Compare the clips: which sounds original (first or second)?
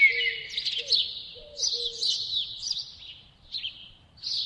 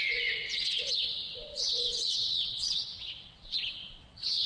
first